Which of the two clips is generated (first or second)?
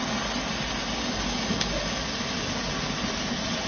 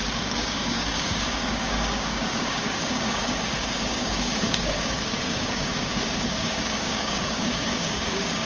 second